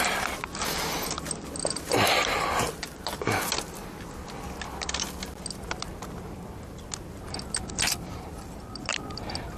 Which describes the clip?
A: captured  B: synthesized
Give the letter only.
A